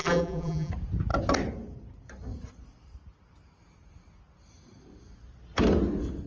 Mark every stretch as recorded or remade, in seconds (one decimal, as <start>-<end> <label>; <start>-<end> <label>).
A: 0.0-0.7 remade; 0.7-6.3 recorded